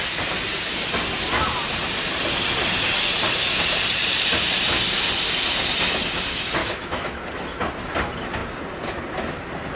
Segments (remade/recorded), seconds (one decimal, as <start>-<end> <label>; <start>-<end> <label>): 0.0-6.6 recorded; 6.6-7.2 remade; 7.2-9.8 recorded